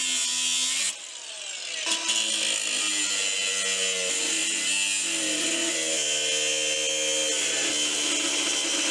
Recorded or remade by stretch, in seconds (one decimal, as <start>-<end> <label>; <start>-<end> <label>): 0.0-8.9 recorded